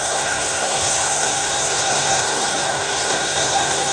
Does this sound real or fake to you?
fake